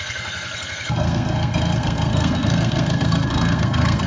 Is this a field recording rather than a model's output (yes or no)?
no